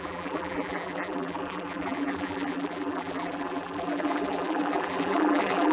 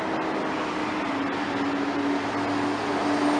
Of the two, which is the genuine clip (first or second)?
second